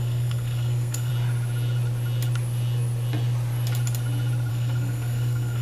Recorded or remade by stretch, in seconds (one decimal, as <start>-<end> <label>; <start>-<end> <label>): 0.0-1.1 remade; 1.1-4.5 recorded; 4.5-5.6 remade